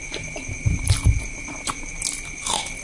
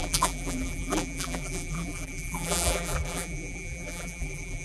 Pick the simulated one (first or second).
second